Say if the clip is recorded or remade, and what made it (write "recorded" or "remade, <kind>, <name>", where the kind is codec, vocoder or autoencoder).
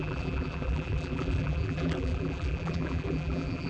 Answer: remade, vocoder, BigVGAN v2